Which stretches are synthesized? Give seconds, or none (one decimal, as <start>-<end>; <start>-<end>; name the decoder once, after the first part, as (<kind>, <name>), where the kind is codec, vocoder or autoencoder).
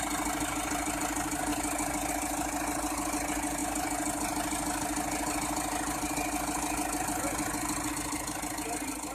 none